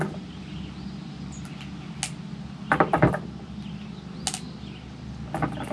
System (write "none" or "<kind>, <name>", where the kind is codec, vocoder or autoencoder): none